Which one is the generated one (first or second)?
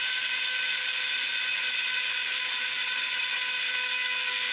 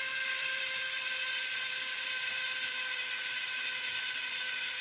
second